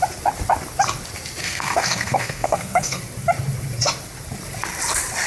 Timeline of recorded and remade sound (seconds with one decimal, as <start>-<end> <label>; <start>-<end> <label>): 0.0-1.4 recorded; 1.4-3.0 remade; 3.0-5.3 recorded